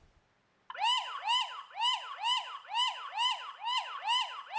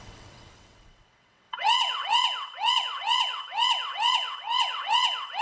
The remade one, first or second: second